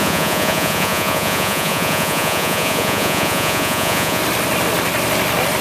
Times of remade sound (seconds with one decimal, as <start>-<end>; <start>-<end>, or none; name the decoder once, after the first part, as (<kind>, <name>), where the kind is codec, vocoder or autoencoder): 0.0-4.2 (vocoder, Vocos)